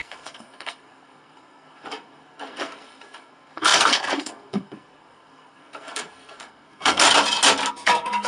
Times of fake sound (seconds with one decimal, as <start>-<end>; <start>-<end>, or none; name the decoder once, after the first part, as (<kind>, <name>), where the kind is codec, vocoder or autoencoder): 0.0-7.0 (codec, SNAC); 7.7-8.3